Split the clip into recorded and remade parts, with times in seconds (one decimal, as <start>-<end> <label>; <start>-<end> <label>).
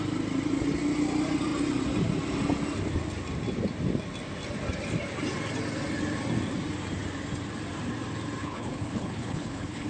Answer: 0.0-8.4 recorded; 8.4-9.9 remade